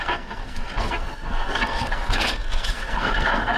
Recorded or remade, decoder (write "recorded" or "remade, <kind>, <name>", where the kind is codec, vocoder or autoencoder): remade, codec, SNAC